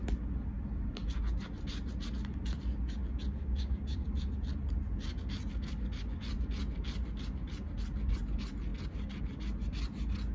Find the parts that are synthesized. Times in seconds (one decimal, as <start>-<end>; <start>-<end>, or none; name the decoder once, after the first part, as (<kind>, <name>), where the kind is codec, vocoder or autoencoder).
3.4-4.1 (codec, DAC)